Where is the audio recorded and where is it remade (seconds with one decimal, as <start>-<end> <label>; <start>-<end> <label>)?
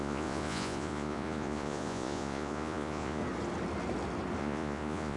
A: 0.0-3.2 remade; 3.2-4.4 recorded; 4.4-5.2 remade